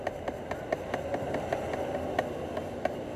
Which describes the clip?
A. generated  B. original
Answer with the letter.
B